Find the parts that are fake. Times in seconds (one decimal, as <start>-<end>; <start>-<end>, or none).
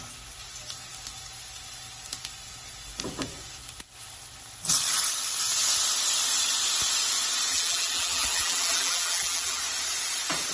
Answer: 7.5-9.6